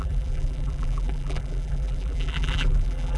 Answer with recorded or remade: remade